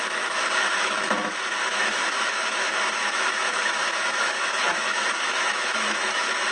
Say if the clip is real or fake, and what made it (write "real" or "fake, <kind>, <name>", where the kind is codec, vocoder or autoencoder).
fake, autoencoder, DAC-VAE